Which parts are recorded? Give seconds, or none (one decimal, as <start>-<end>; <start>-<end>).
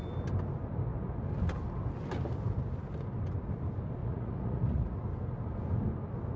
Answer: 0.0-4.0; 5.0-6.4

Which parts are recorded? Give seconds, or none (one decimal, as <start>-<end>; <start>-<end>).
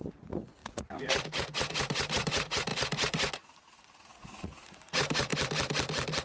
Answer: 5.3-6.2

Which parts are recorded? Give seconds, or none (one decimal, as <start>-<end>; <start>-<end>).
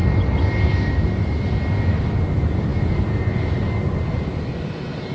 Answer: 0.0-5.1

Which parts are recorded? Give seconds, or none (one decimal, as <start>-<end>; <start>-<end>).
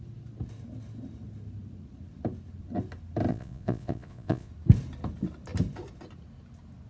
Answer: 0.0-3.3; 4.5-6.9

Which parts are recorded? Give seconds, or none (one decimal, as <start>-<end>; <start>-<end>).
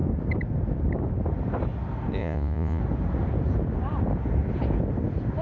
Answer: 0.0-2.2; 2.8-5.4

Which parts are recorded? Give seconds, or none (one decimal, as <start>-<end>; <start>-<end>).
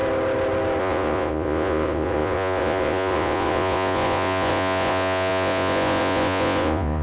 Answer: 0.0-0.8